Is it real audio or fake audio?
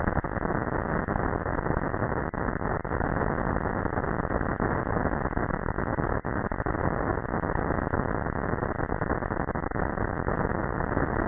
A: real